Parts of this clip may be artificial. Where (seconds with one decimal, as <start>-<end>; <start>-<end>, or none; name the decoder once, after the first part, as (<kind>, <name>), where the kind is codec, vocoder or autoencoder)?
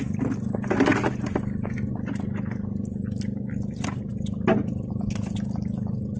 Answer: none